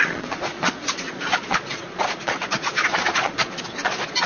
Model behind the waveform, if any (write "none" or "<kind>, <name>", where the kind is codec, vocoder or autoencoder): vocoder, Vocos